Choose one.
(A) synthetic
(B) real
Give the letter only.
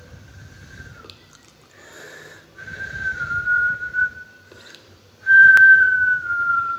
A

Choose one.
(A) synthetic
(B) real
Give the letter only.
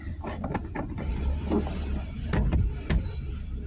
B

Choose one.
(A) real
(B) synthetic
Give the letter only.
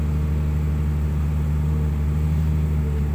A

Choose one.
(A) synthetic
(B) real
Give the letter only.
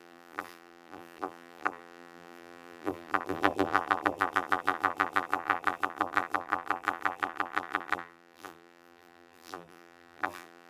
A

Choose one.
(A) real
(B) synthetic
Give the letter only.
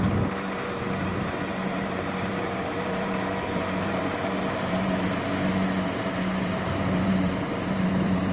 B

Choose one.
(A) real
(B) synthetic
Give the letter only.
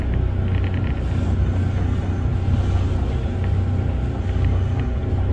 A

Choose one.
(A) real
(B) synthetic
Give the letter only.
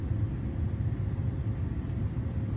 A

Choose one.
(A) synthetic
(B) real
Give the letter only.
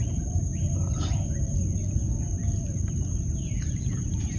A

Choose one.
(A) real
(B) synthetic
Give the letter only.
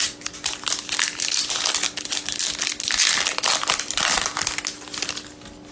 A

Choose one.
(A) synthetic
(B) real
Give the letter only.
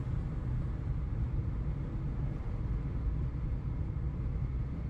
A